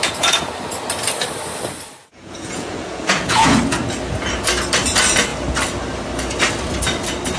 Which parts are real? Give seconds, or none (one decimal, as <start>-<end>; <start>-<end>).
0.5-2.0; 3.6-7.4